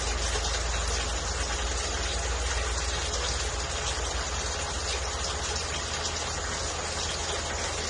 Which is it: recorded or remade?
recorded